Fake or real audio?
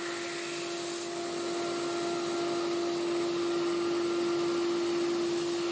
real